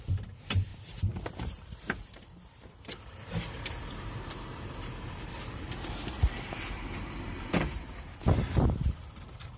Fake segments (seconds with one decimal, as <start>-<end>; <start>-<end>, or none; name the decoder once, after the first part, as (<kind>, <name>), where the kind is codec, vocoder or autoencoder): 0.0-9.6 (vocoder, BigVGAN v2)